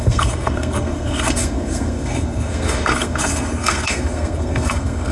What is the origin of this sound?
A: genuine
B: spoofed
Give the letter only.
B